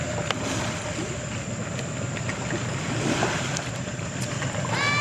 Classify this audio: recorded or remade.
recorded